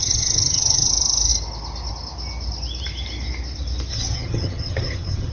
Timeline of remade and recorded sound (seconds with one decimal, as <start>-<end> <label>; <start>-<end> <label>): 0.0-0.9 remade; 0.9-3.9 recorded; 3.9-5.3 remade